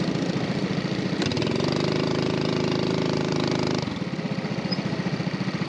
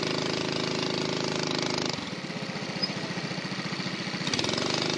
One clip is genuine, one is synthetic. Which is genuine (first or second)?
second